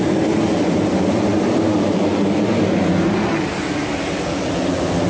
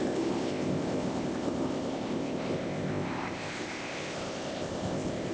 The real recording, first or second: first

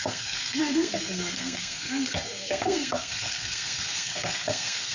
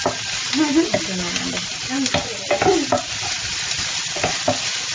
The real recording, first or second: second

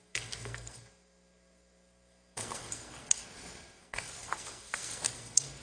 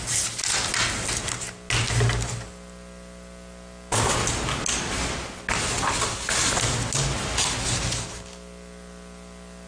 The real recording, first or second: second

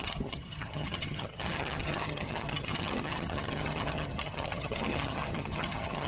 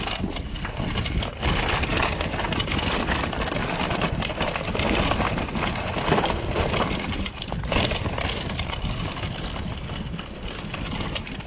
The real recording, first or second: second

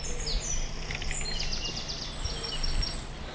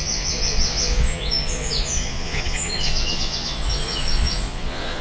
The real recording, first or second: first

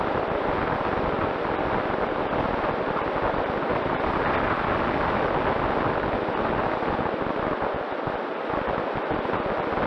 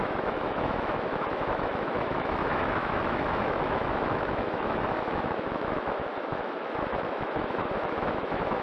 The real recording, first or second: first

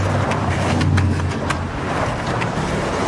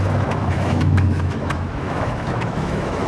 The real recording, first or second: first